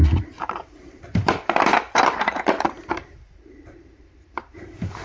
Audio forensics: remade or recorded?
remade